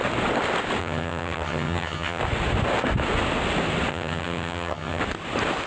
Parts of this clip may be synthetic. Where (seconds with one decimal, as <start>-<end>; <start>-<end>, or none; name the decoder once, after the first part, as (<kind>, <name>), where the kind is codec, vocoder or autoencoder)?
0.8-2.2 (vocoder, HiFi-GAN); 3.9-5.0

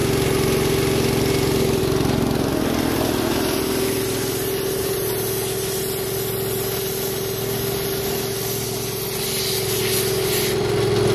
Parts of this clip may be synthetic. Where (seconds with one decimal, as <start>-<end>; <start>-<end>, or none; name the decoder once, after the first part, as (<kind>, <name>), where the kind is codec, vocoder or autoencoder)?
none

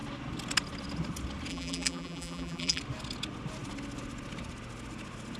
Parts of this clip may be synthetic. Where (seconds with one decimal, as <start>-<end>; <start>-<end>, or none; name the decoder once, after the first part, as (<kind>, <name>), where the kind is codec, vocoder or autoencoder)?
1.5-2.8 (vocoder, BigVGAN v2)

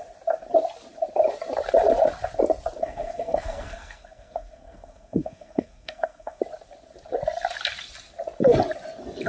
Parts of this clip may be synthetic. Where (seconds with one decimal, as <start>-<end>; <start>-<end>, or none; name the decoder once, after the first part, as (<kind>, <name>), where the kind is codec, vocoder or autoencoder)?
2.8-6.4 (codec, SNAC)

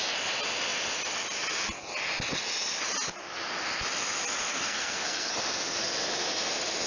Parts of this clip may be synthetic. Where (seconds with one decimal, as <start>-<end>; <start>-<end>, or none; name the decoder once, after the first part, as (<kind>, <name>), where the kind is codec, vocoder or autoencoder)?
4.4-5.3 (codec, SNAC)

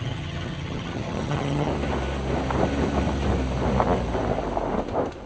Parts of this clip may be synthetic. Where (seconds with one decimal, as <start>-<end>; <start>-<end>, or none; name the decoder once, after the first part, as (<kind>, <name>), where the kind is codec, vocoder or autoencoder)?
0.0-1.7 (vocoder, HiFi-GAN)